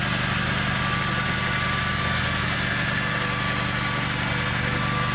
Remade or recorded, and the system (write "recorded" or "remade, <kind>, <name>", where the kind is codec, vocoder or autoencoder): recorded